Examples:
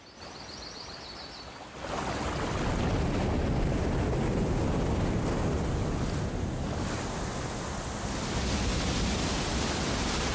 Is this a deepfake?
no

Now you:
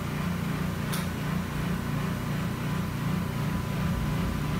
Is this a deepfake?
no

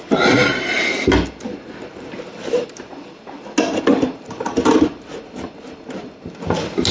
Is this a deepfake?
no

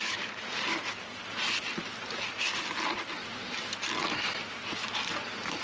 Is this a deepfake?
no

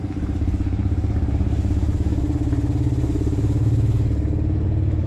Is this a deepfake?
yes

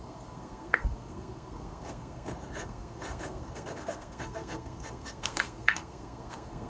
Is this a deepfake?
yes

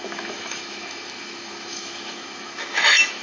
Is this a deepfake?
yes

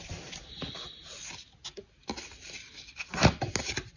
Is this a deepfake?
no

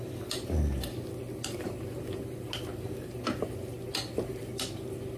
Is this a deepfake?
no